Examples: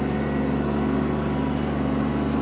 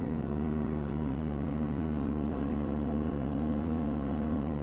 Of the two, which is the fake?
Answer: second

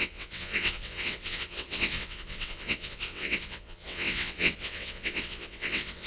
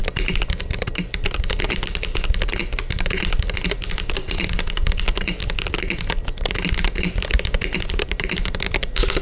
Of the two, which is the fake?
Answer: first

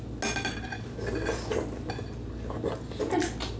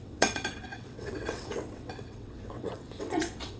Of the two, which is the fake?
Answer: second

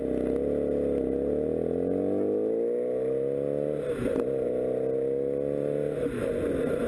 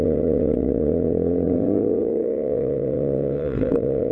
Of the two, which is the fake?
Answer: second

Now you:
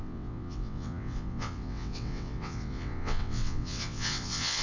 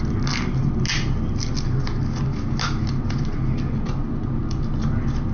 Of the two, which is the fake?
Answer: first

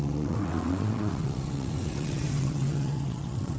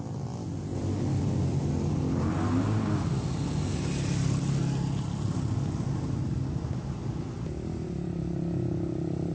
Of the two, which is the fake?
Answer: first